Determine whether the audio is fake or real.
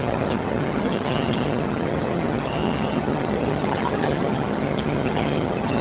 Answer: fake